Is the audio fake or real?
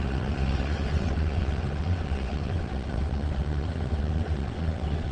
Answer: fake